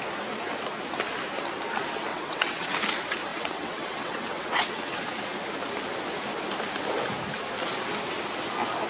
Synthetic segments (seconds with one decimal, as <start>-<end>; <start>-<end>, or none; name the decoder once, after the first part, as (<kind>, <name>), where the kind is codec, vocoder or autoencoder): 2.1-2.7 (vocoder, WaveNeXt); 3.3-5.0